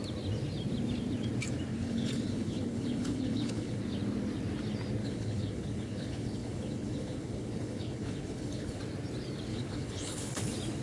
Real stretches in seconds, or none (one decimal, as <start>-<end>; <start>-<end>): 0.0-1.7; 3.8-5.0; 8.8-9.5; 10.4-10.8